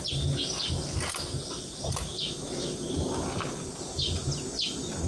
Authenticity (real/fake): real